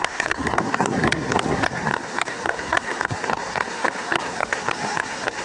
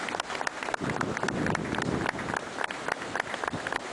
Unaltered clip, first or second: second